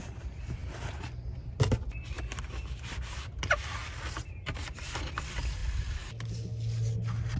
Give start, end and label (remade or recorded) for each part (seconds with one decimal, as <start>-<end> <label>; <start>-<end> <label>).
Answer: 0.0-7.4 recorded